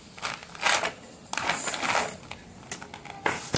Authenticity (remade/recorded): recorded